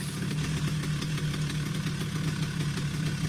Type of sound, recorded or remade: recorded